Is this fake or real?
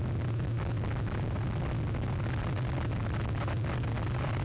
real